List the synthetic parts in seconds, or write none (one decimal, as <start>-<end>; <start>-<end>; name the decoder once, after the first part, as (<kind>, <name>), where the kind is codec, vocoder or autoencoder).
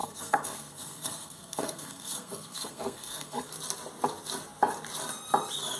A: 0.0-3.5 (codec, SNAC)